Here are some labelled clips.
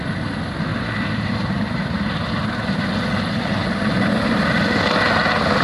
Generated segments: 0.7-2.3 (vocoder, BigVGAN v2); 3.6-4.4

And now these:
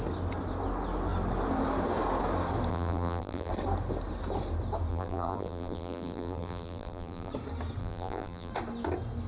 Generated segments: 2.7-3.5 (vocoder, BigVGAN v2); 4.9-7.3; 7.8-8.5

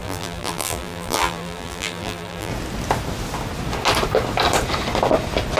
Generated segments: 0.0-2.5 (vocoder, BigVGAN v2)

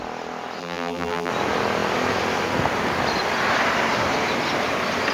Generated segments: 0.6-1.3 (vocoder, BigVGAN v2)

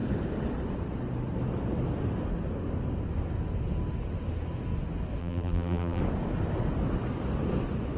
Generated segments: 5.2-6.0 (vocoder, BigVGAN v2)

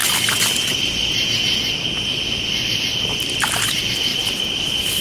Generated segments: 2.6-5.0 (vocoder, BigVGAN v2)